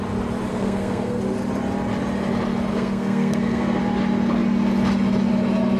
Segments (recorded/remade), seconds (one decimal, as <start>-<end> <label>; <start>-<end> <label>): 0.0-0.5 recorded; 0.5-1.2 remade; 1.2-2.7 recorded; 2.7-3.8 remade; 3.8-5.8 recorded